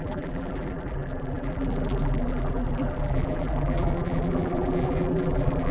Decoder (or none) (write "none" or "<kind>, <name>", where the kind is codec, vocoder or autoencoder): vocoder, BigVGAN v2